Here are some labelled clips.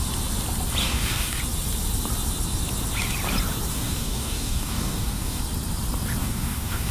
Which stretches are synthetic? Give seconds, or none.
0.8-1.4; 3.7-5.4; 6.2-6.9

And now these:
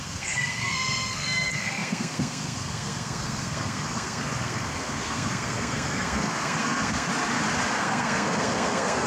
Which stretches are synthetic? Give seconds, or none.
0.0-7.1; 7.8-9.1

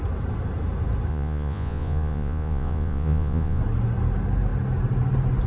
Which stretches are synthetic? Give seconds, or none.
1.1-3.6